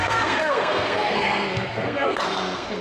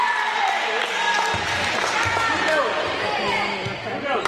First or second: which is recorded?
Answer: second